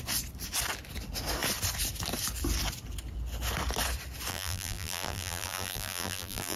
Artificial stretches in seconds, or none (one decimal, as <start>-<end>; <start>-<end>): 4.3-6.6